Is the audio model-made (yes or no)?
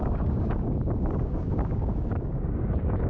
yes